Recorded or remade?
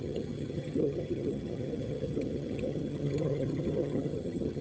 remade